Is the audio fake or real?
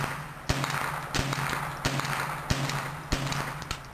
real